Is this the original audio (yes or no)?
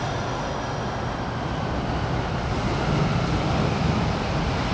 yes